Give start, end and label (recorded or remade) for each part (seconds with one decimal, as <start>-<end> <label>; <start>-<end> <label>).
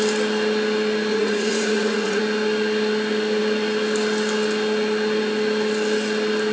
0.0-1.1 recorded; 1.1-2.2 remade; 2.2-6.5 recorded